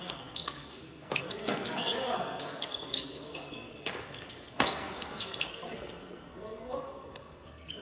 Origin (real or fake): fake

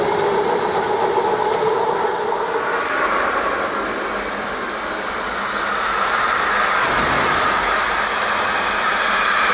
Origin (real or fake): real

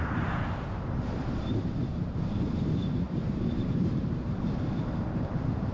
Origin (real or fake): fake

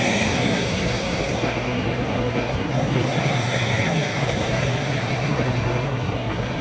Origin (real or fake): fake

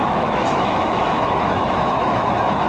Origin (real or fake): fake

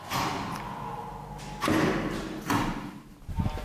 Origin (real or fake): real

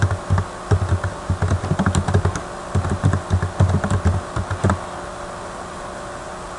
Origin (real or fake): real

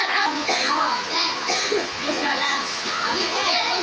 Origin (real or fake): fake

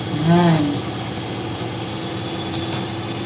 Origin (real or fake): real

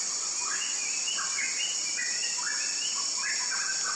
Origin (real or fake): real